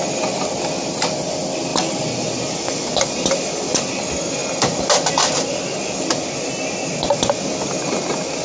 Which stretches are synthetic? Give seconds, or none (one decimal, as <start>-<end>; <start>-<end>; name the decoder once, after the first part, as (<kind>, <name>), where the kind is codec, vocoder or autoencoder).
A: 1.7-3.8 (vocoder, BigVGAN v2)